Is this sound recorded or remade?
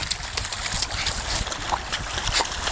recorded